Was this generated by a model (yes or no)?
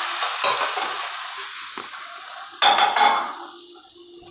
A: no